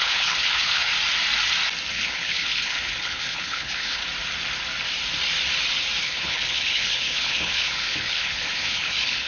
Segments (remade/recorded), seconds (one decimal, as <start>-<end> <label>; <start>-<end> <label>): 0.0-0.9 remade; 0.9-1.9 recorded; 1.9-4.0 remade; 4.0-6.0 recorded; 6.0-9.3 remade